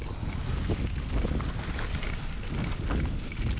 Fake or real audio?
real